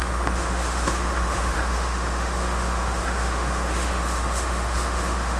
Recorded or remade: remade